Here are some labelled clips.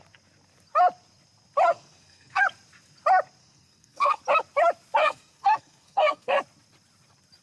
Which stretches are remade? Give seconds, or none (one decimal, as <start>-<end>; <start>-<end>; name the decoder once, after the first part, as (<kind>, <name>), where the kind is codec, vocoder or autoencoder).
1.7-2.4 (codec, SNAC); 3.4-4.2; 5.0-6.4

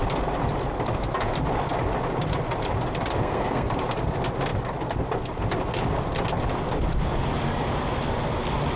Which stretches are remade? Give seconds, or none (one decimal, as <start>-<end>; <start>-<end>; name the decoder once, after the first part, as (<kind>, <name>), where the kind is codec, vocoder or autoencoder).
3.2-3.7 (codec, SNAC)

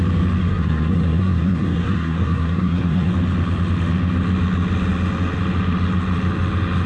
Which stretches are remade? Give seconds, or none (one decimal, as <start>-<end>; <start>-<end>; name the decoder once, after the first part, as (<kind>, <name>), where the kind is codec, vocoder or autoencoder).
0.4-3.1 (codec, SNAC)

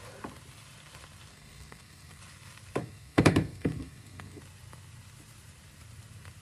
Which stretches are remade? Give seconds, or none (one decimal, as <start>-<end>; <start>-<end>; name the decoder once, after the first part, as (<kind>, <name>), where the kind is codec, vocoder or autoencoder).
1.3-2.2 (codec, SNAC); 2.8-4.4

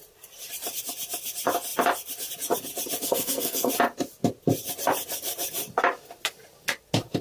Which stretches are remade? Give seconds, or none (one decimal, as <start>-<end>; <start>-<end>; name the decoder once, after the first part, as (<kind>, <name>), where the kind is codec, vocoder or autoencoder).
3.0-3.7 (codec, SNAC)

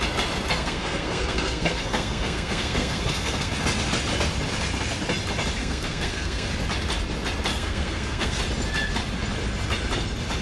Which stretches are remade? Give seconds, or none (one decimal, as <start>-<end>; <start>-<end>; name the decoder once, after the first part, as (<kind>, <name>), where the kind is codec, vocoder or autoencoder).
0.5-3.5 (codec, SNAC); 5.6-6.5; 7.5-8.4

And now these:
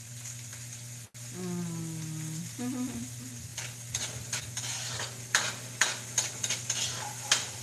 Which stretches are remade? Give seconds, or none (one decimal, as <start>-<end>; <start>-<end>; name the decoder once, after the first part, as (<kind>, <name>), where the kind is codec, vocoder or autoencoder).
none

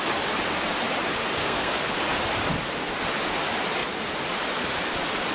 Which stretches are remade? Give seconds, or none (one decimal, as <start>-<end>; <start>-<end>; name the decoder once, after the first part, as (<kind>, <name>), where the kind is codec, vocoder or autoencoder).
1.4-2.0 (codec, SNAC)